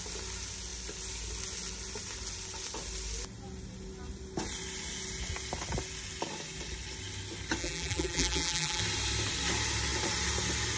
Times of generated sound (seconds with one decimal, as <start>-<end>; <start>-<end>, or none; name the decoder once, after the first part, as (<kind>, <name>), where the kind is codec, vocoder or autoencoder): 7.6-8.8 (vocoder, BigVGAN v2)